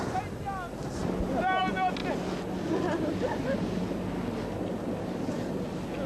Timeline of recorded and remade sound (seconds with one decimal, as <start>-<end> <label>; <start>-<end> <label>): 0.0-6.1 recorded